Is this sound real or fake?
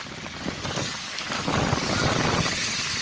real